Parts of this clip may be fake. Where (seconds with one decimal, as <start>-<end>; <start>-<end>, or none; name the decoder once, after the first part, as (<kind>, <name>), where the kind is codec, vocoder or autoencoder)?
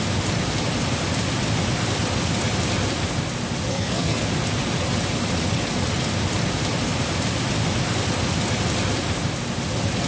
3.7-4.2 (codec, SNAC)